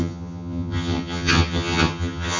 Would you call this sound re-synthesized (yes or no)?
yes